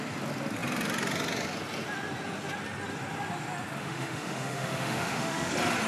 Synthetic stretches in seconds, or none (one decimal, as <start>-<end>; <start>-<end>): 3.8-5.5